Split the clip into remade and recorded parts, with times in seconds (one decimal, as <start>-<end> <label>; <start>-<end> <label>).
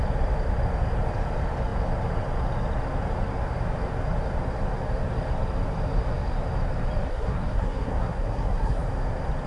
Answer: 0.0-7.1 recorded; 7.1-8.8 remade; 8.8-9.5 recorded